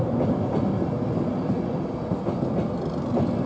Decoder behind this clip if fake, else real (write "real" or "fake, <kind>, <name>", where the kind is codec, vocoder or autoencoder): real